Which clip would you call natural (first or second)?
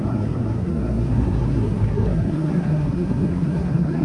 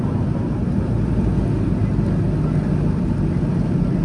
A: second